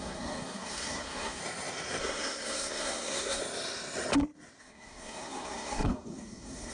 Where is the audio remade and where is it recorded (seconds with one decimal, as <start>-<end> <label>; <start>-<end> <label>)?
0.0-1.4 remade; 1.4-2.0 recorded; 2.0-3.4 remade; 3.4-4.6 recorded; 4.6-6.7 remade